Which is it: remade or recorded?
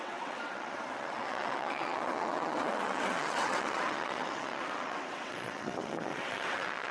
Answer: remade